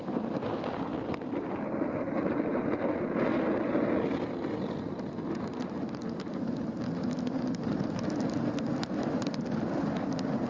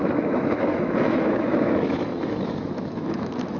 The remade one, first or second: second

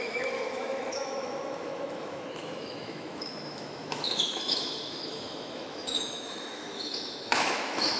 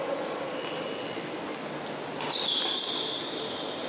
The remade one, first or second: first